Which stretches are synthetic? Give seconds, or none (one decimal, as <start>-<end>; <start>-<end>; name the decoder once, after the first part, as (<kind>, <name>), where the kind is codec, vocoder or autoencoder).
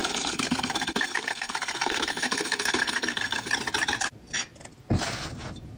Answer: 0.0-3.5 (codec, SNAC)